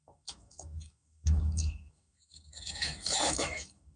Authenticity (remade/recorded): remade